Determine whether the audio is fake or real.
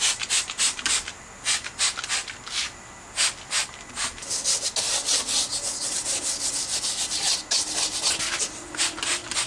real